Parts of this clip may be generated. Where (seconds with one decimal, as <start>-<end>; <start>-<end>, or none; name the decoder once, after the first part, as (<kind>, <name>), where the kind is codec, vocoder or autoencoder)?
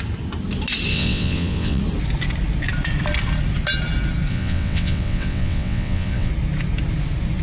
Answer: 0.9-1.8 (vocoder, WaveNeXt); 4.3-6.3